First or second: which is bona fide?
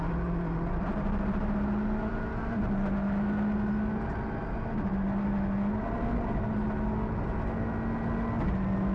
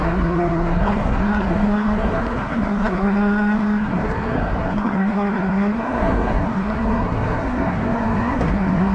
first